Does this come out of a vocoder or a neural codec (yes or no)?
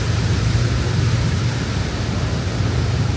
yes